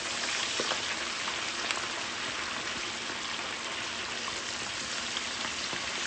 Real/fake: real